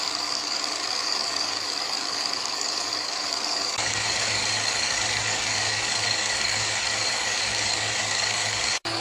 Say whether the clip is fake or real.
fake